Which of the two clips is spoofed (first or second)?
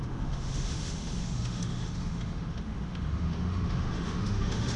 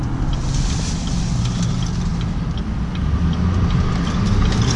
first